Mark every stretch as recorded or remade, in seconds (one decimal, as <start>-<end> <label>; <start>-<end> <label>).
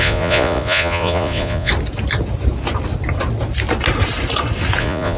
0.0-1.7 remade; 1.7-4.8 recorded; 4.8-5.2 remade